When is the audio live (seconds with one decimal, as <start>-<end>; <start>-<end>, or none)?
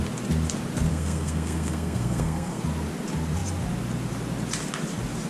0.0-0.9; 2.6-5.3